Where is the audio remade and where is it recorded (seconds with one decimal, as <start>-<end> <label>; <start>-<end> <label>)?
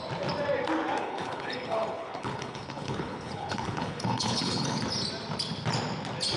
0.0-1.0 recorded; 1.0-4.8 remade; 4.8-6.4 recorded